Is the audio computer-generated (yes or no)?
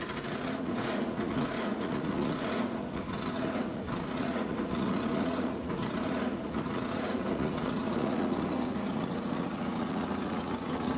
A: yes